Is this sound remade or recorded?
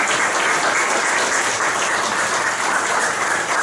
recorded